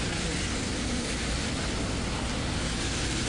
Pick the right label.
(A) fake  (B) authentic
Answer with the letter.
B